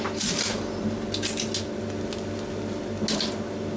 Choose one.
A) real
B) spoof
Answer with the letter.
A